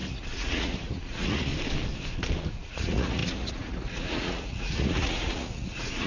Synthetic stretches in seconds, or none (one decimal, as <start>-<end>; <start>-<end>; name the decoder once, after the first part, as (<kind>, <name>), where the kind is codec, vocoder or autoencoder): 0.0-1.5 (vocoder, Vocos); 2.5-6.1